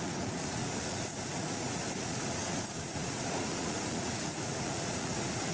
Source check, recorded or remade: remade